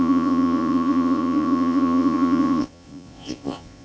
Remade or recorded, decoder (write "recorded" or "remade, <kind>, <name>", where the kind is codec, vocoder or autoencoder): remade, vocoder, Vocos